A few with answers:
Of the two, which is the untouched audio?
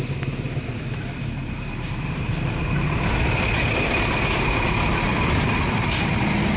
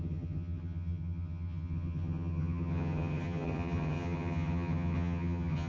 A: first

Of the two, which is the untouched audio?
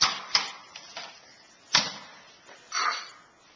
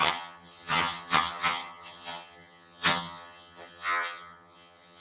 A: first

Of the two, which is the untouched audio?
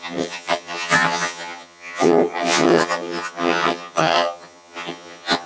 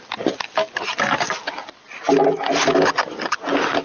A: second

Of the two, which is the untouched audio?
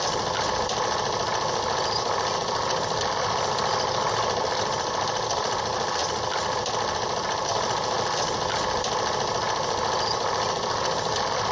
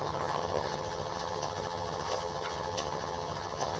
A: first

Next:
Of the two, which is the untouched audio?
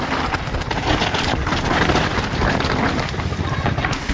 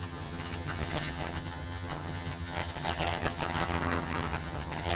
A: first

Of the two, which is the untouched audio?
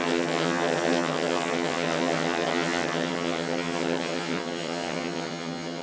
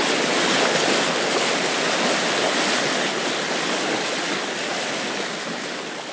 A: second